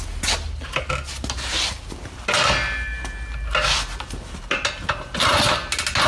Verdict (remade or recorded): recorded